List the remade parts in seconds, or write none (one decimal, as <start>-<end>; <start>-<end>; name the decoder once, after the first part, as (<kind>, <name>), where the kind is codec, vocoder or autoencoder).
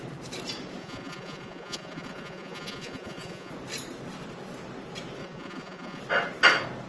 0.8-3.5 (vocoder, Vocos); 5.2-6.0